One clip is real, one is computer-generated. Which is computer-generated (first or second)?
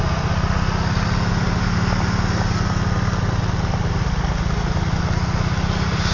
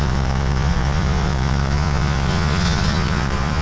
second